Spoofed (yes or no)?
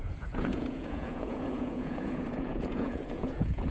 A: yes